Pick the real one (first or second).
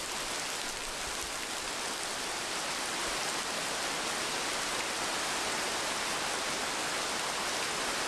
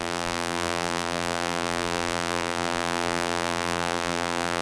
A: first